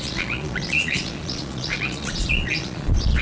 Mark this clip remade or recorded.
remade